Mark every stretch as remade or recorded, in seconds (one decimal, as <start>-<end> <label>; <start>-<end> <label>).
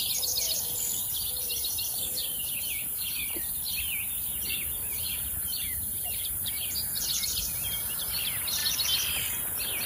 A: 0.0-8.6 remade; 8.6-9.1 recorded; 9.1-9.9 remade